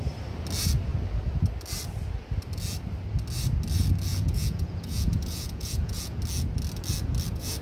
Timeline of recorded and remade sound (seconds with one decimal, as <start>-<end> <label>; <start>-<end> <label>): 0.0-4.1 recorded; 4.1-6.2 remade; 6.2-7.6 recorded